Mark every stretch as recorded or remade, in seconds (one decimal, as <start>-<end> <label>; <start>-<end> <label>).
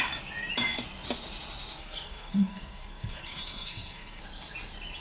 0.0-1.8 recorded; 1.8-4.2 remade; 4.2-5.0 recorded